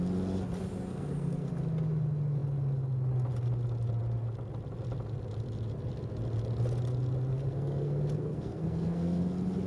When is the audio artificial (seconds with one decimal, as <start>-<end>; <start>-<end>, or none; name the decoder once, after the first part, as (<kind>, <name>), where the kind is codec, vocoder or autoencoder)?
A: 0.9-1.5 (codec, SNAC); 7.3-9.2